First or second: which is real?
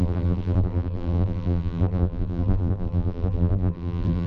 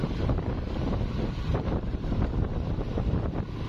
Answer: second